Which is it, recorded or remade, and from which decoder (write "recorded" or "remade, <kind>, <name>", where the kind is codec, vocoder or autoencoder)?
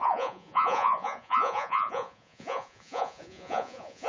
remade, vocoder, Vocos